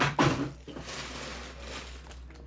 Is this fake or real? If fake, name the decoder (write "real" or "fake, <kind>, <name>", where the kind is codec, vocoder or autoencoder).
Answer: real